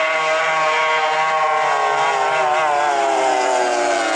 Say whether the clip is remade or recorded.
recorded